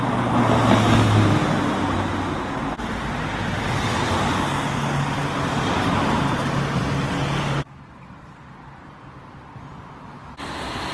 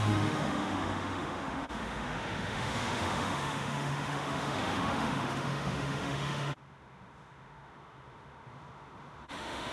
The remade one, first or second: second